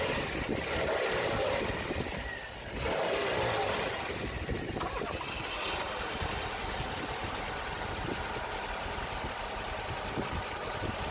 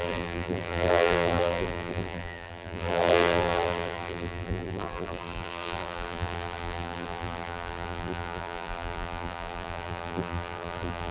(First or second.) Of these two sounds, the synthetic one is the second